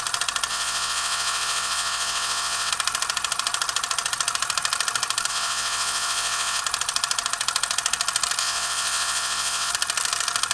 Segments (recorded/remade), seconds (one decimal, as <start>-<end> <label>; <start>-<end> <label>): 0.0-0.5 recorded; 0.5-2.7 remade; 2.7-5.3 recorded; 5.3-6.6 remade; 6.6-8.4 recorded; 8.4-9.7 remade; 9.7-10.5 recorded